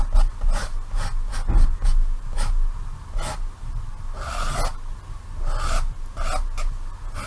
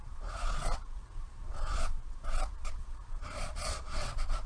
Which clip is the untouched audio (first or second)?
first